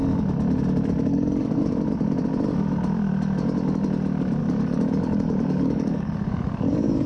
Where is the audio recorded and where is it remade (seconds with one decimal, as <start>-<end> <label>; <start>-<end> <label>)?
0.0-1.1 recorded; 1.1-1.6 remade; 1.6-4.4 recorded; 4.4-7.1 remade